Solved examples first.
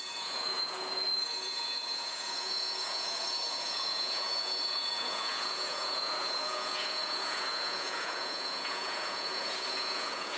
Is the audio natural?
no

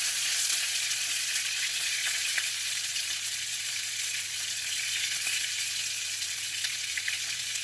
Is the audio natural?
no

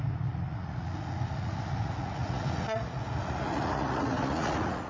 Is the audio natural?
no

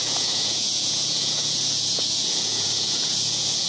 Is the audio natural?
no